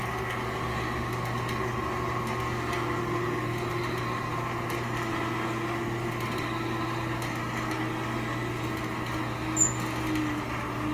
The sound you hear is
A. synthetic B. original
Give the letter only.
B